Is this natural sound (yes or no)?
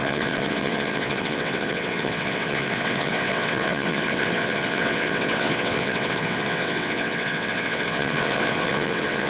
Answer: no